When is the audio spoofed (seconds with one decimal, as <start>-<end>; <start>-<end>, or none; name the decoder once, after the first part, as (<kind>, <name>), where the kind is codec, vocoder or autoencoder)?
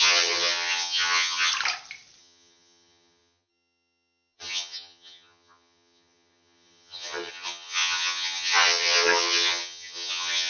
0.0-1.5 (vocoder, HiFi-GAN); 2.2-10.5